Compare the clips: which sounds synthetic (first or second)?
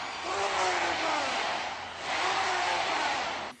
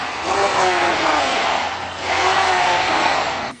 second